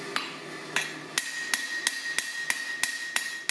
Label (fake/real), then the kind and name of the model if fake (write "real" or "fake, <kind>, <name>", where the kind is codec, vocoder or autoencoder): real